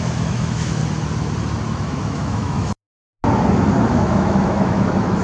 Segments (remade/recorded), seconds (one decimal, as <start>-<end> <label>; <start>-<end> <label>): 0.0-0.8 remade; 0.8-1.6 recorded; 1.6-2.8 remade; 2.8-3.9 recorded; 3.9-5.2 remade